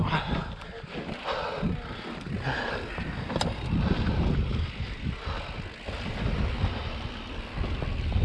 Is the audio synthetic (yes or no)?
no